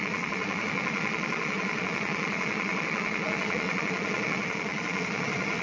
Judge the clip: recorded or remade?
remade